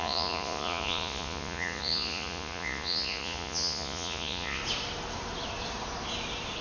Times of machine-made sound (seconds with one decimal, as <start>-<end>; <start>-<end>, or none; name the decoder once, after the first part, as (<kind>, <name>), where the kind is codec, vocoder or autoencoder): 0.0-4.6 (vocoder, Vocos)